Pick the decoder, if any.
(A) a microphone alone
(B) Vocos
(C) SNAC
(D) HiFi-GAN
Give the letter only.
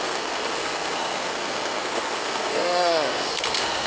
C